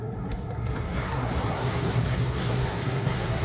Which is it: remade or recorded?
remade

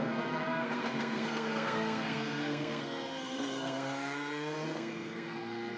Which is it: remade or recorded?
remade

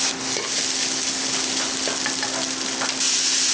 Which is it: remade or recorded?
recorded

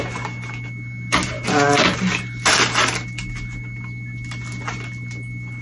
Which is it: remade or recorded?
recorded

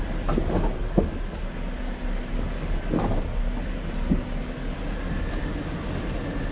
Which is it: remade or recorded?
recorded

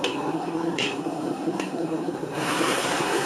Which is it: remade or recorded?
remade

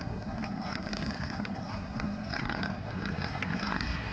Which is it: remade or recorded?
remade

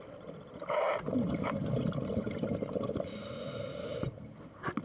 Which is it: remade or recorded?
recorded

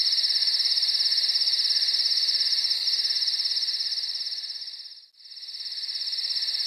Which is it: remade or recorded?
recorded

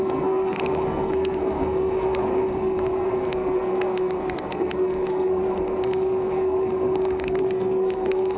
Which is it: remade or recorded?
remade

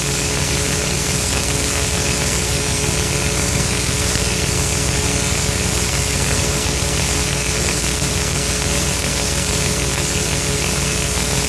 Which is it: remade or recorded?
remade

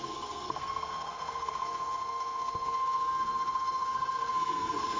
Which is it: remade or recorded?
remade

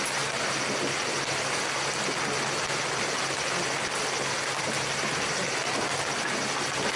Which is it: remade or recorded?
recorded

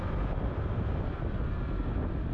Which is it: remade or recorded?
recorded